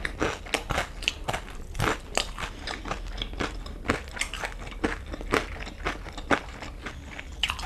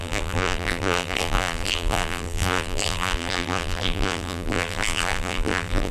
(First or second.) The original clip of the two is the first